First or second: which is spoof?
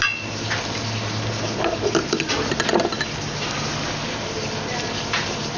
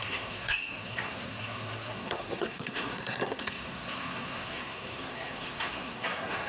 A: second